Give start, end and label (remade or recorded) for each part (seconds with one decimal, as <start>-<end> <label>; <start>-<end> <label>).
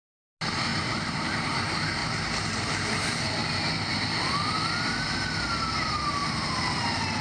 0.0-0.7 recorded; 0.7-1.6 remade; 1.6-6.2 recorded; 6.2-6.8 remade; 6.8-7.2 recorded